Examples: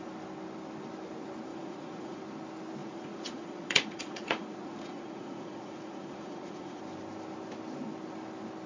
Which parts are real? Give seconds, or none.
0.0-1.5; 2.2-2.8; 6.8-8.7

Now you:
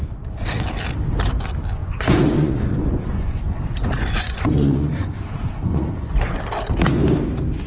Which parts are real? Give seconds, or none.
0.0-1.8; 6.4-7.7

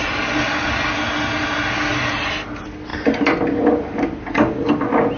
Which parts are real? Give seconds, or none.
0.0-5.2